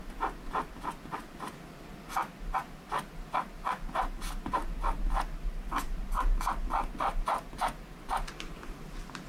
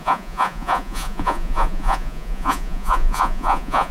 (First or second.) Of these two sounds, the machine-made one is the second